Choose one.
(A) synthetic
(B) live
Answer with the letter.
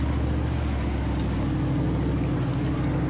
B